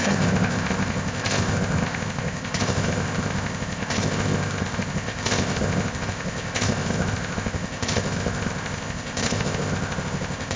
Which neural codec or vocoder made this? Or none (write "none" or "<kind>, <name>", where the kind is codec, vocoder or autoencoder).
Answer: codec, ZipCodec